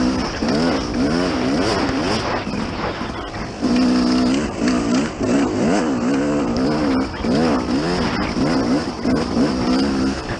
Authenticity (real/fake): real